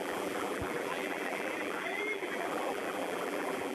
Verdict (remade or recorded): remade